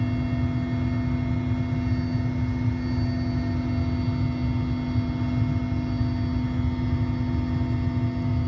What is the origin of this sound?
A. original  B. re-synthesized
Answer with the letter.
A